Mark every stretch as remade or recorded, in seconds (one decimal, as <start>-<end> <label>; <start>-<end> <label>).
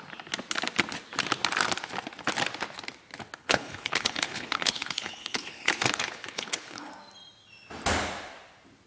0.0-3.4 recorded; 3.4-6.9 remade; 6.9-8.9 recorded